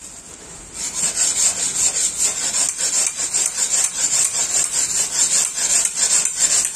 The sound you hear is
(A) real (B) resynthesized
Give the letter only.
A